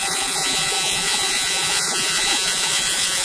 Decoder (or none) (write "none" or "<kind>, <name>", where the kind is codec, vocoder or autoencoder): vocoder, Vocos